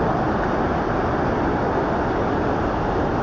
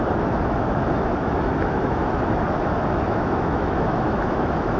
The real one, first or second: first